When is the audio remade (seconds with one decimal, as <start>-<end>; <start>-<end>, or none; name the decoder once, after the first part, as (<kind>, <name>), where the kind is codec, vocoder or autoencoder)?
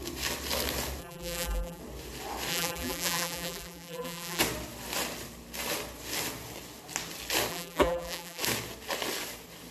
1.0-1.8 (vocoder, BigVGAN v2); 2.5-4.4; 7.5-8.4